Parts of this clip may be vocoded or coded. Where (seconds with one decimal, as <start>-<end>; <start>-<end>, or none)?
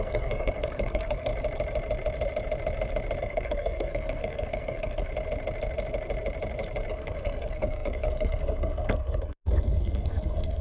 0.0-1.3; 3.2-5.1; 6.9-10.6